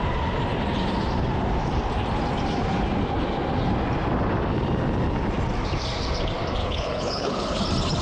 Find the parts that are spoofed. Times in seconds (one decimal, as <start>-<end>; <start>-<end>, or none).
6.6-7.6